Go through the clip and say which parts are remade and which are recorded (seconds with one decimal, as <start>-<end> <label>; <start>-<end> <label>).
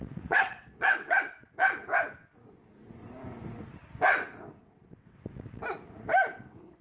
0.0-1.9 remade; 1.9-4.6 recorded; 4.6-5.6 remade; 5.6-6.8 recorded